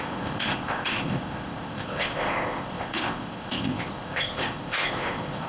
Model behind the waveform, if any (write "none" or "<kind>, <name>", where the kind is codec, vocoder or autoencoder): codec, ZipCodec